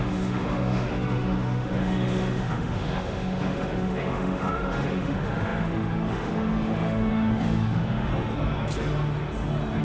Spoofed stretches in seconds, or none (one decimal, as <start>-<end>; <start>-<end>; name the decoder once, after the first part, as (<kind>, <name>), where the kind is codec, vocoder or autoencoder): 0.0-8.1 (autoencoder, DAC-VAE)